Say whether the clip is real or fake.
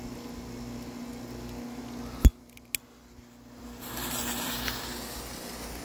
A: real